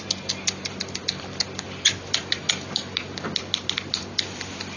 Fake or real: real